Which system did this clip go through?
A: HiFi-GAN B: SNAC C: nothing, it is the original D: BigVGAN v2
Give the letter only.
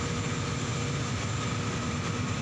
C